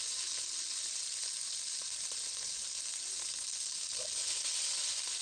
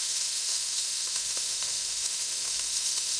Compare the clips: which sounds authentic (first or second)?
first